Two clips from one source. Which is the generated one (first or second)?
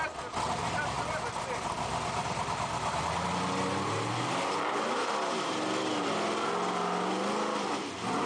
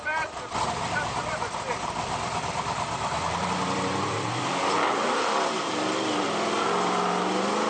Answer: second